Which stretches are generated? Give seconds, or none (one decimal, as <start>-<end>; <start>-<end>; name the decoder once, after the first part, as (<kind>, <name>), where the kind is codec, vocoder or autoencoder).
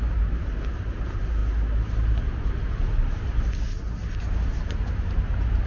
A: none